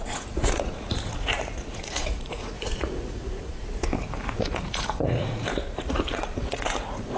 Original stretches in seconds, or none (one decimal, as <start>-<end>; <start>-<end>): 3.5-4.0